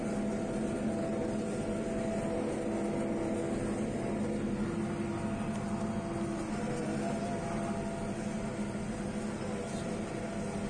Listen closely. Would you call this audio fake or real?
real